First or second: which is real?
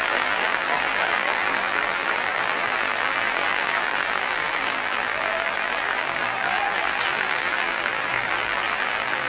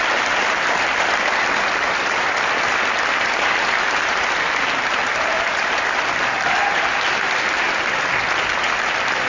second